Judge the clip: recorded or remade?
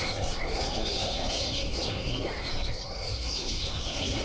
remade